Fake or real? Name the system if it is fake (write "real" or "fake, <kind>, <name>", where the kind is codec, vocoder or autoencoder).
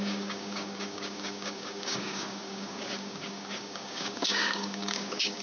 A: fake, codec, DAC